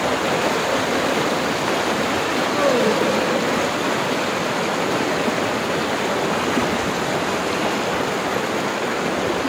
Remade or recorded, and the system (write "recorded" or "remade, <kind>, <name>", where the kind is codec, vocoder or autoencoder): recorded